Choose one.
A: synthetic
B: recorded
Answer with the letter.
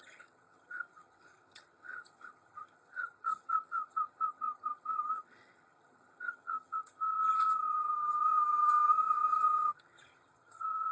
A